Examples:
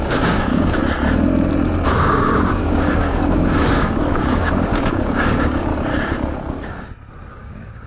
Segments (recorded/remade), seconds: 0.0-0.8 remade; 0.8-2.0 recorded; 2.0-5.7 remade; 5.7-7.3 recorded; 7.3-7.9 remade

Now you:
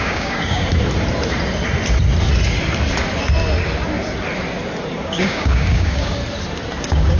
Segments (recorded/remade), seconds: 0.0-0.7 remade; 0.7-5.0 recorded; 5.0-6.2 remade; 6.2-6.8 recorded; 6.8-7.2 remade

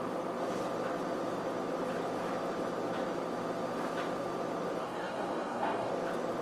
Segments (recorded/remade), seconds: 0.0-4.8 recorded; 4.8-5.9 remade; 5.9-6.4 recorded

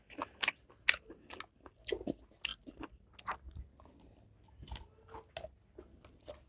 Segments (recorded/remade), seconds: 0.0-6.5 recorded

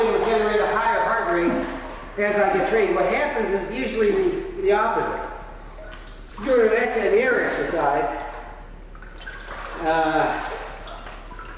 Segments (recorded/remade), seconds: 0.0-2.0 recorded; 2.0-2.6 remade; 2.6-6.8 recorded; 6.8-7.7 remade; 7.7-11.6 recorded

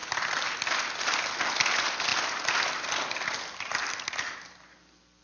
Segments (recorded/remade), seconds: 0.0-5.2 recorded

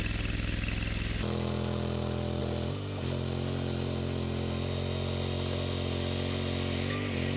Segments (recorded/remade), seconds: 0.0-7.4 recorded